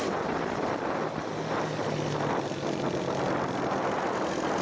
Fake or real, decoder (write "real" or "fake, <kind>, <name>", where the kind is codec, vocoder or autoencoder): real